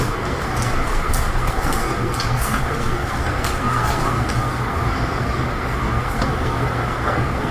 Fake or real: fake